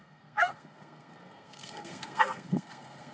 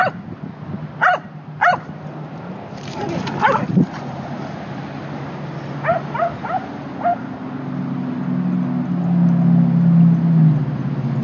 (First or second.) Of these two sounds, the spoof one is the first